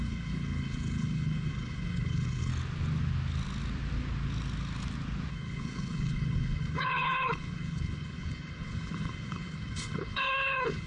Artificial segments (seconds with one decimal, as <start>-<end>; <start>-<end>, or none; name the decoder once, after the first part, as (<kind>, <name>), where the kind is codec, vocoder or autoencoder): 0.0-2.5 (codec, HILCodec); 5.3-10.9